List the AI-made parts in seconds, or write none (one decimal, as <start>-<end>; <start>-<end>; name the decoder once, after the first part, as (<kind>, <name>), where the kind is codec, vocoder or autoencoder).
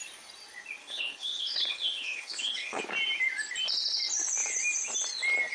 0.8-2.8 (codec, HILCodec)